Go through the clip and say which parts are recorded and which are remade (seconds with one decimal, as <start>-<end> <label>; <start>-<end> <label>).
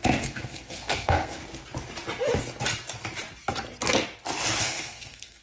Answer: 0.0-1.4 remade; 1.4-4.6 recorded; 4.6-5.4 remade